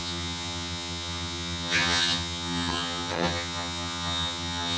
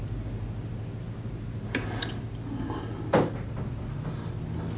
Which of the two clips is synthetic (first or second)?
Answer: first